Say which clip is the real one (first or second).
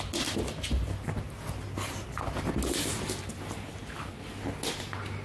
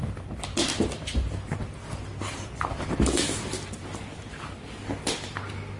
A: first